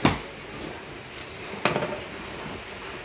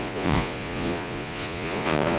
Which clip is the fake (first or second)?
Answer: second